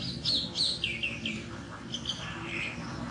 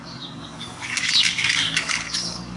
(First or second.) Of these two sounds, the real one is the first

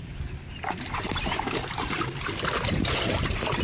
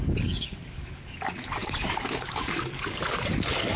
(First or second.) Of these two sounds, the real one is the first